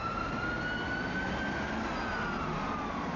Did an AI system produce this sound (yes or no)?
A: no